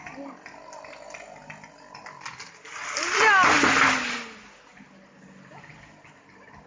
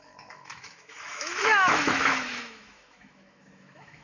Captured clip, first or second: first